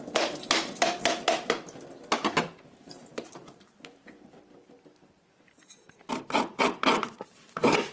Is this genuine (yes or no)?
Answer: no